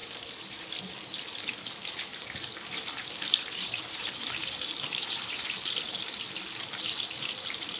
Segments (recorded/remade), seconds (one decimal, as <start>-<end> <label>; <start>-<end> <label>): 0.0-0.8 remade; 0.8-2.1 recorded; 2.1-5.6 remade; 5.6-7.8 recorded